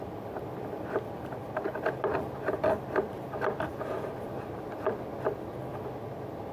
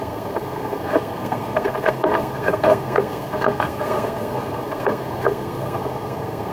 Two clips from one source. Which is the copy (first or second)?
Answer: second